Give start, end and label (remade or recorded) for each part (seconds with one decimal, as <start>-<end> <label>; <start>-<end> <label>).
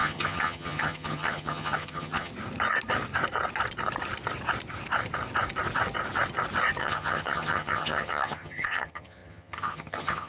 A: 0.0-2.3 remade; 2.3-6.8 recorded; 6.8-10.3 remade